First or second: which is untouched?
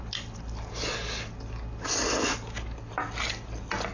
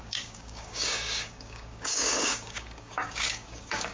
first